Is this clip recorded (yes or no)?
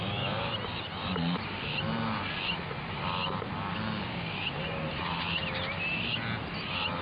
yes